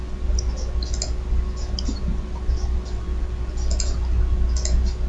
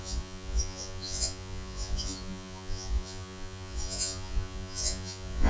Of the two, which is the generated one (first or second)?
second